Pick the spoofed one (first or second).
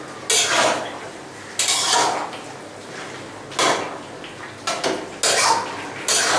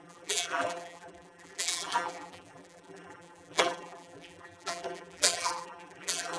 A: second